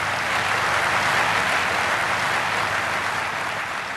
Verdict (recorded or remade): recorded